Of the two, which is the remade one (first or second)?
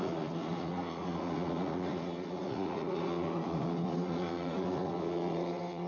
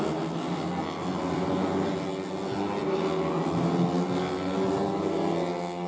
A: first